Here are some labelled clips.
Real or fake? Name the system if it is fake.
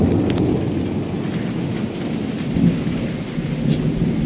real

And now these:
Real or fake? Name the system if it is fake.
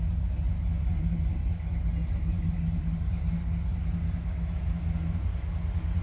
real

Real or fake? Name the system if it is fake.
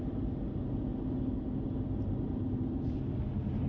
real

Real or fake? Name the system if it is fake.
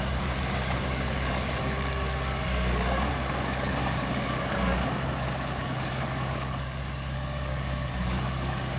fake, codec, DAC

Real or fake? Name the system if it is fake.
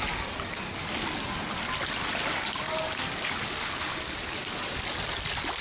real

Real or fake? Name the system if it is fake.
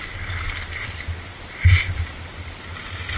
real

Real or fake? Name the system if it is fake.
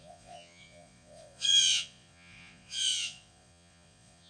fake, vocoder, Vocos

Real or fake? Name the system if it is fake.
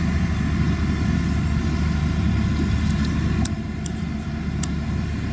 real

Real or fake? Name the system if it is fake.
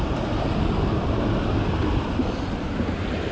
real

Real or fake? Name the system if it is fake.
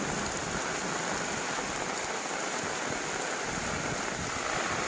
real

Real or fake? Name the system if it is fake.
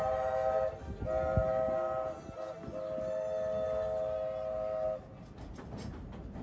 real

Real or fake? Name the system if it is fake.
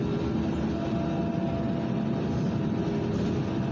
real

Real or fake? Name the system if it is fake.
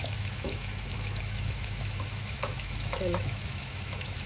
fake, autoencoder, DAC-VAE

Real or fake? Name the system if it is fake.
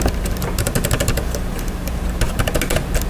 real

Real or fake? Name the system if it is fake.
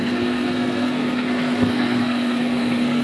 fake, codec, SNAC